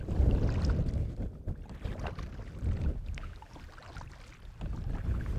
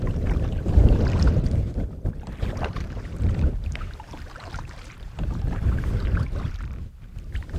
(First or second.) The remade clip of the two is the second